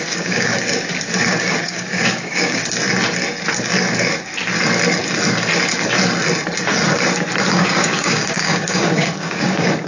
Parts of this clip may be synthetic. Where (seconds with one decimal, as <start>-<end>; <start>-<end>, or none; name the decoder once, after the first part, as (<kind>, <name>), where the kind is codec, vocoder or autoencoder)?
0.0-0.5 (codec, DAC); 1.3-2.6; 7.5-9.9